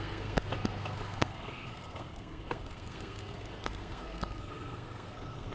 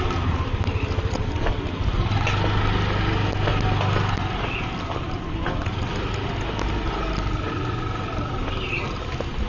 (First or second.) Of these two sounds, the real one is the second